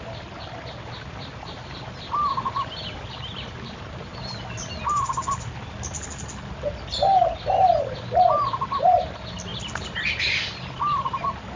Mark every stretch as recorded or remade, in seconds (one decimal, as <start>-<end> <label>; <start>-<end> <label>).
0.0-11.6 recorded